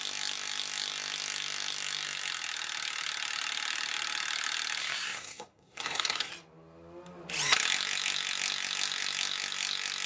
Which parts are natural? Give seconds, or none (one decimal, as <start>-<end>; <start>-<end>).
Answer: 0.0-4.8; 6.3-10.1